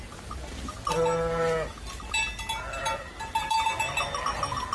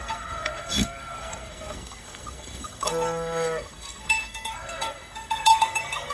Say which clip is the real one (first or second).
first